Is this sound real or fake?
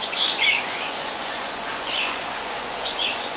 fake